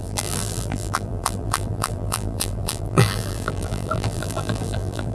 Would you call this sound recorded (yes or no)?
no